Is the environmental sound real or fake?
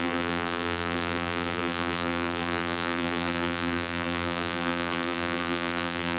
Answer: fake